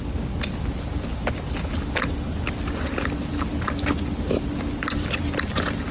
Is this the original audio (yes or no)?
yes